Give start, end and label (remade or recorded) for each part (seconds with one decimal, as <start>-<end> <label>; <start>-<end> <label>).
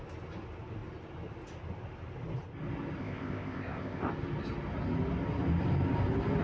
0.0-3.0 recorded; 3.0-4.1 remade; 4.1-6.4 recorded